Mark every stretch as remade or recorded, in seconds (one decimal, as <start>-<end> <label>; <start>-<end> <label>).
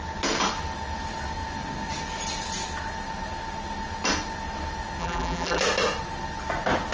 0.0-5.0 recorded; 5.0-5.6 remade; 5.6-6.9 recorded